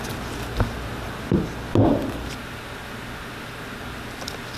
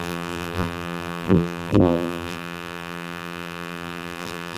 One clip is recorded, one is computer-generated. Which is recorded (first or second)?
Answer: first